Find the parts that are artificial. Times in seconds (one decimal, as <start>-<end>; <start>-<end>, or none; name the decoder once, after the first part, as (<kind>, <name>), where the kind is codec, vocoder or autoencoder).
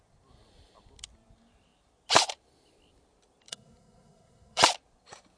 3.5-4.6 (codec, SNAC)